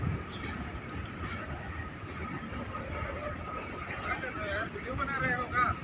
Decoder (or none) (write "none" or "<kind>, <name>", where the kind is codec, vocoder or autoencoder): none